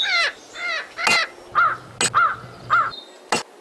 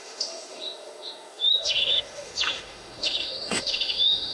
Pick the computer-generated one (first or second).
second